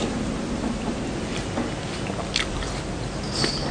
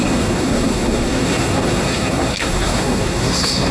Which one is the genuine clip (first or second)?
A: first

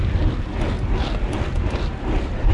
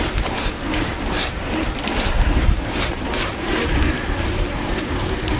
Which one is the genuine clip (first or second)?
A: first